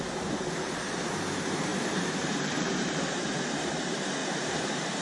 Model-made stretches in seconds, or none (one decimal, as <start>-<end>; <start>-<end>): 0.0-5.0